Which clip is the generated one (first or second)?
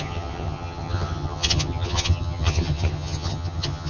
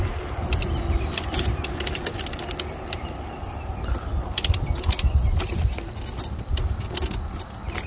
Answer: first